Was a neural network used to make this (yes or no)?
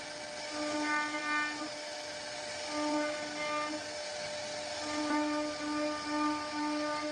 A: no